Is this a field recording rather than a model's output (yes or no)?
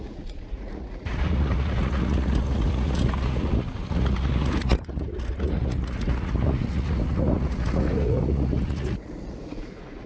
no